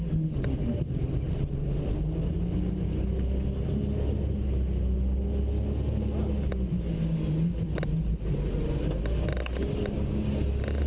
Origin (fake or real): real